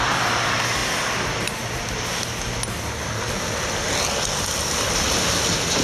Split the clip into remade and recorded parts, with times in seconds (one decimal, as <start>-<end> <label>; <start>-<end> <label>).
0.0-5.8 recorded